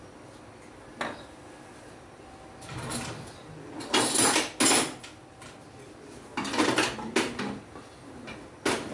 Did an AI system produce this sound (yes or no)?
no